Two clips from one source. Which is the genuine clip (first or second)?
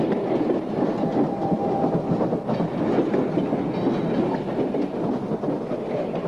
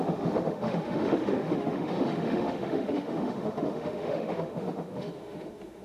first